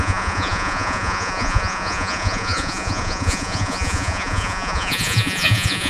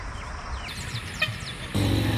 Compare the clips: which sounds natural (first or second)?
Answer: second